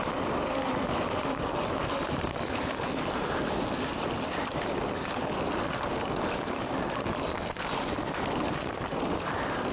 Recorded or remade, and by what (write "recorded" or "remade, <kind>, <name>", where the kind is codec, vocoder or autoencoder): remade, vocoder, BigVGAN v2